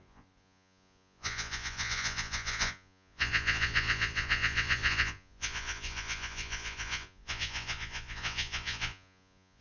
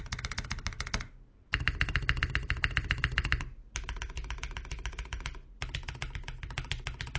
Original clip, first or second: second